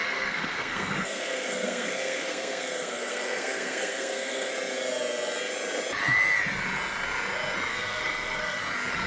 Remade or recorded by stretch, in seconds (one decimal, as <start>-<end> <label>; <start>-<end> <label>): 0.0-4.5 remade; 4.5-7.7 recorded; 7.7-8.6 remade; 8.6-9.1 recorded